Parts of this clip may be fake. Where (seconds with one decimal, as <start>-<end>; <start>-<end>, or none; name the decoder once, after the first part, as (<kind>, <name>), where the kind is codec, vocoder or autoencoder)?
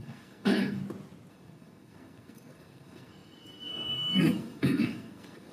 0.0-0.8 (codec, SNAC); 1.3-5.5